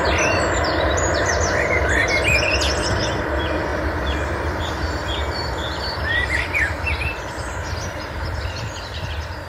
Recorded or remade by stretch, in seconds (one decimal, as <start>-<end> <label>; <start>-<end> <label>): 0.0-2.0 remade; 2.0-3.2 recorded; 3.2-3.7 remade; 3.7-4.6 recorded; 4.6-5.0 remade; 5.0-5.5 recorded; 5.5-9.5 remade